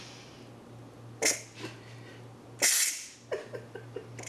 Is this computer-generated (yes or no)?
no